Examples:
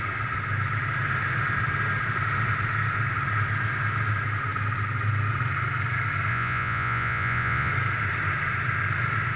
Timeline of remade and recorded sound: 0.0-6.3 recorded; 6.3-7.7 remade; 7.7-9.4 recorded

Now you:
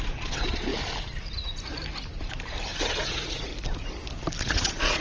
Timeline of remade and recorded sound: 0.0-0.7 remade; 0.7-2.8 recorded; 2.8-3.5 remade; 3.5-4.4 recorded; 4.4-5.0 remade

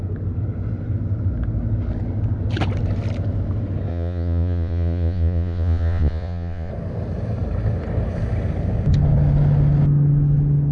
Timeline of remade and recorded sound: 0.0-3.9 recorded; 3.9-6.7 remade; 6.7-10.7 recorded

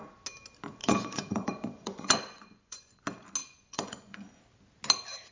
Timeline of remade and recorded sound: 0.0-0.8 recorded; 0.8-3.0 remade; 3.0-3.4 recorded; 3.4-4.4 remade; 4.4-5.3 recorded